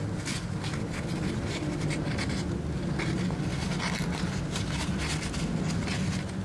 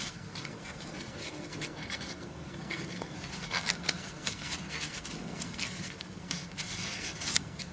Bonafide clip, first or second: first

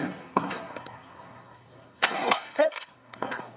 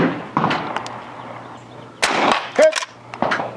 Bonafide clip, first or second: second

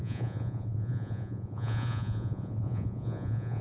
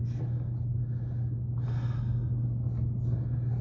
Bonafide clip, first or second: second